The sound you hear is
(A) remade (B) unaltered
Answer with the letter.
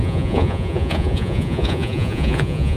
A